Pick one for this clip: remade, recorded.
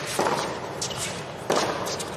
recorded